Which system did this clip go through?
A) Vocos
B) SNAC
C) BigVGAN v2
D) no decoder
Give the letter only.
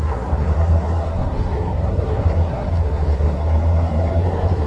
B